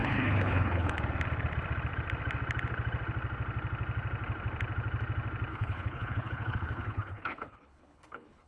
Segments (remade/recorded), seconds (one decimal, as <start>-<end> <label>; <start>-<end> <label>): 0.0-1.0 remade; 1.0-5.5 recorded; 5.5-8.5 remade